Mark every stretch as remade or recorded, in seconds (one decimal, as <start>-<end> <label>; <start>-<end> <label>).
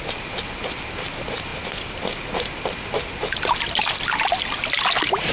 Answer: 0.0-5.3 recorded